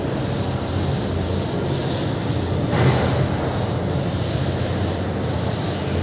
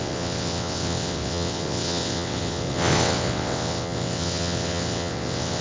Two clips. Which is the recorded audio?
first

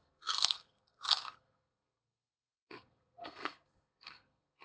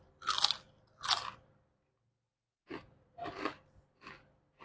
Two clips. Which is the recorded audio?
second